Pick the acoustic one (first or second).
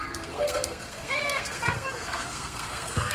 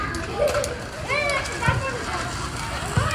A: second